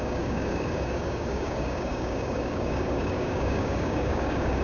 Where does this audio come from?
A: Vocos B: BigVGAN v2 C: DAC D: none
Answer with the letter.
C